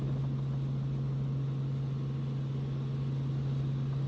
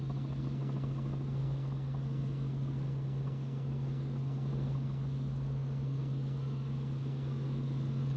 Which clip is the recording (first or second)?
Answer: first